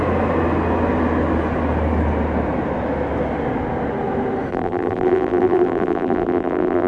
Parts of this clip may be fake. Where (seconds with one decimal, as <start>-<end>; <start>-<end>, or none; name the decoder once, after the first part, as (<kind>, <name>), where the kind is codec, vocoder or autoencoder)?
4.5-6.9 (vocoder, BigVGAN v2)